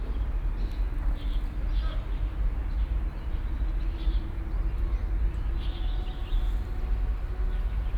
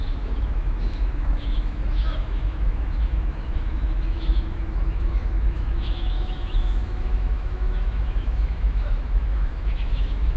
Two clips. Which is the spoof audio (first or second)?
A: second